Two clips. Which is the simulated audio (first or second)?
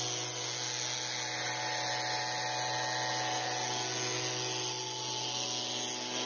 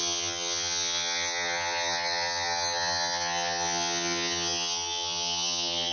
second